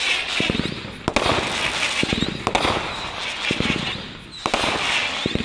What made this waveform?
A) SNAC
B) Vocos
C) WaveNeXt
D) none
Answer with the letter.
D